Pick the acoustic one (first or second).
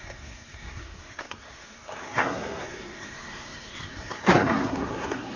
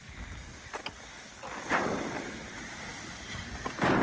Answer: second